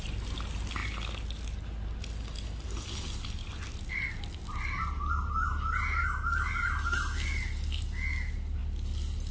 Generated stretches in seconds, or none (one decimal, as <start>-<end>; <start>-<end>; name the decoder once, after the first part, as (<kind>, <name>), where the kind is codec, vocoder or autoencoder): none